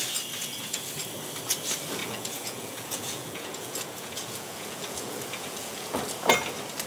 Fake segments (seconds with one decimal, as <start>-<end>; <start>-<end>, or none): 0.4-0.9; 2.0-6.0